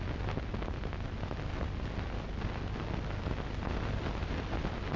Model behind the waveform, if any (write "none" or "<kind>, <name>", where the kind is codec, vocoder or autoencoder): none